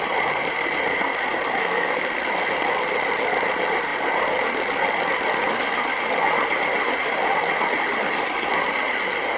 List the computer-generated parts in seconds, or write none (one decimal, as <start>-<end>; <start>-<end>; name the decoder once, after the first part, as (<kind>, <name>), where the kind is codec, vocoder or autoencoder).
1.6-2.2 (codec, SNAC)